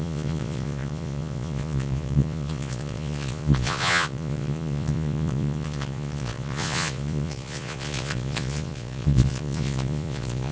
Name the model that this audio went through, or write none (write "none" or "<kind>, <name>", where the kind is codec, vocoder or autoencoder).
vocoder, Vocos